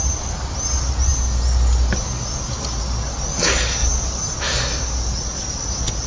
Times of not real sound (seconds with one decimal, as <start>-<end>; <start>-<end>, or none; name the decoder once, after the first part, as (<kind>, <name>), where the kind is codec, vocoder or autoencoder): none